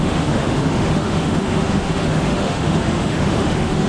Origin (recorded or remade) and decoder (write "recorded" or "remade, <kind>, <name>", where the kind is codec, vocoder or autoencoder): remade, autoencoder, DAC-VAE